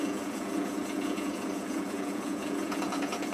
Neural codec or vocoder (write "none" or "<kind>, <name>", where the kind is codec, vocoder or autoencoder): vocoder, Vocos